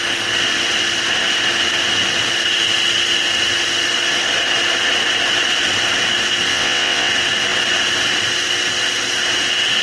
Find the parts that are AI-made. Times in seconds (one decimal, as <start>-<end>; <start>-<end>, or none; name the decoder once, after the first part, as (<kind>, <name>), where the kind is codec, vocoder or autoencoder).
6.5-7.1 (vocoder, WaveNeXt)